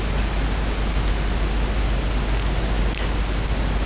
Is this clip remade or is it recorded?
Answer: recorded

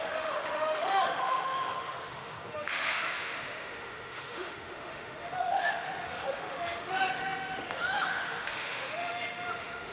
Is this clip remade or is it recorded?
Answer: remade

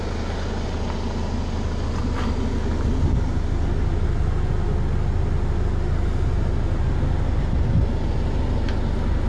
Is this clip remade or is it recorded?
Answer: recorded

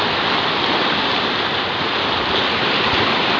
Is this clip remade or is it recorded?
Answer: recorded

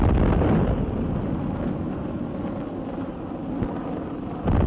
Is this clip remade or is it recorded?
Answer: recorded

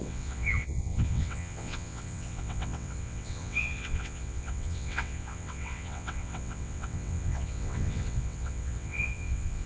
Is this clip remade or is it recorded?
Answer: remade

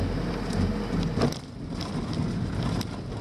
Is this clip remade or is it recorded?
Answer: recorded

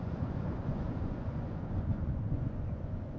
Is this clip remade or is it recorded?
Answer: remade